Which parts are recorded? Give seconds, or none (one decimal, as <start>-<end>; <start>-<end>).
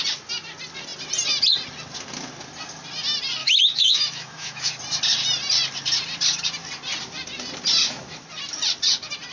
0.0-3.4; 4.8-7.8; 8.3-9.3